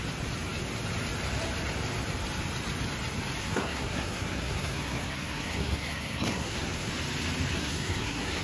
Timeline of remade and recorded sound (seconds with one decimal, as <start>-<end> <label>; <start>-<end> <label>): 0.0-3.4 recorded; 3.4-6.9 remade; 6.9-7.5 recorded; 7.5-8.4 remade